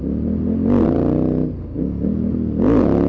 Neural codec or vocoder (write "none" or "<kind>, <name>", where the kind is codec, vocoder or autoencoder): none